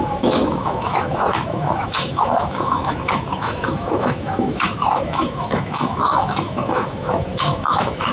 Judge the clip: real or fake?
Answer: fake